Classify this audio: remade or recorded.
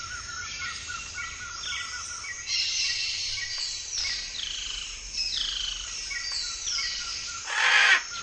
recorded